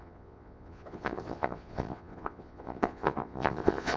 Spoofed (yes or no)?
yes